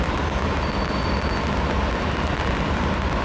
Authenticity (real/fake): real